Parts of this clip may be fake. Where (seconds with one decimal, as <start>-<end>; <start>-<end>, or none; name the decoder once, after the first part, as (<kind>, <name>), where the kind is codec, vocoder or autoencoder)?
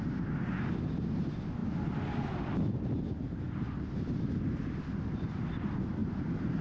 6.0-6.6 (vocoder, BigVGAN v2)